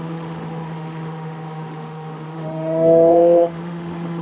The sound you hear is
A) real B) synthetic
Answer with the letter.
B